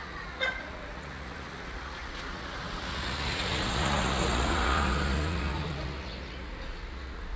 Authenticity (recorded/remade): remade